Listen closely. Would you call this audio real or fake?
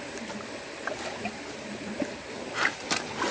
real